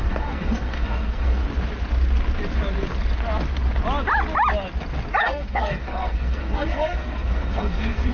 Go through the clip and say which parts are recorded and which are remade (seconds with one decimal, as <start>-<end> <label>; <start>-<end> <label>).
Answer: 0.0-1.4 remade; 1.4-5.2 recorded; 5.2-8.1 remade

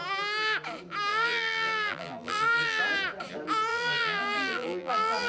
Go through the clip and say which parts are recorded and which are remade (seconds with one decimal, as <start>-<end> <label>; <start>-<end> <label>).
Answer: 0.0-1.1 recorded; 1.1-2.8 remade; 2.8-3.7 recorded; 3.7-5.3 remade